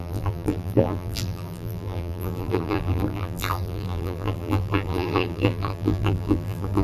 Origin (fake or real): fake